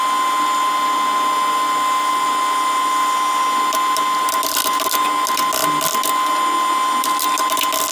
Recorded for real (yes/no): yes